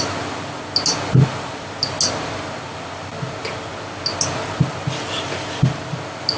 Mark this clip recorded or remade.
recorded